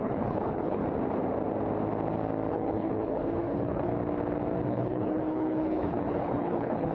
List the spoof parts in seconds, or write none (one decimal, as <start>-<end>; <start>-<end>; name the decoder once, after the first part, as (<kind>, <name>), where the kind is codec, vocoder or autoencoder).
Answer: 0.0-0.8 (codec, HILCodec); 2.5-3.9; 4.7-6.9